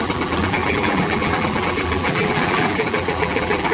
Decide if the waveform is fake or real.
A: fake